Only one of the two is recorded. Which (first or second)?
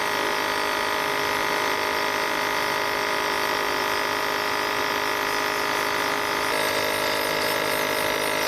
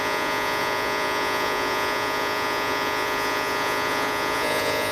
first